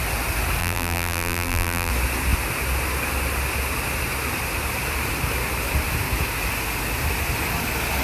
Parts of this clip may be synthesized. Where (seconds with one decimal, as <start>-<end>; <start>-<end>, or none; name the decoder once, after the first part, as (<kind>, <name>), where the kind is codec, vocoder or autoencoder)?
0.6-1.9 (vocoder, BigVGAN v2)